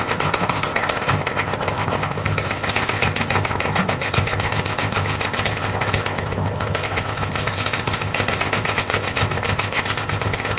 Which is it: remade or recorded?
remade